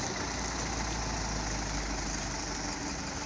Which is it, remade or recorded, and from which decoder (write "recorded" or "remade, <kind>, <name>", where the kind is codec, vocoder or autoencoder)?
recorded